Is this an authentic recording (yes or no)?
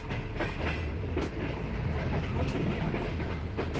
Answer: yes